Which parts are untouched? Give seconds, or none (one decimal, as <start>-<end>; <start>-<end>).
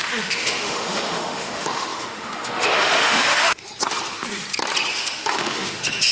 3.7-4.9